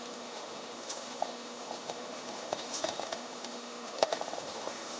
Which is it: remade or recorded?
remade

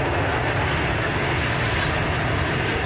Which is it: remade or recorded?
recorded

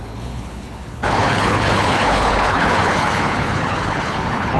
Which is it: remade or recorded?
remade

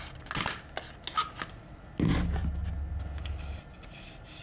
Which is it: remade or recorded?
recorded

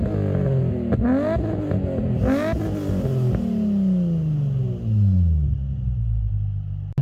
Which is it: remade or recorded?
recorded